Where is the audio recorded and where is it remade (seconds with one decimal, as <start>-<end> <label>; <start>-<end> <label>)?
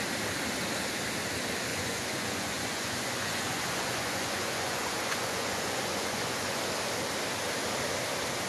0.0-1.7 recorded; 1.7-6.6 remade; 6.6-8.5 recorded